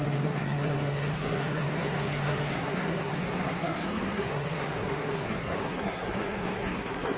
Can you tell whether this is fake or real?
fake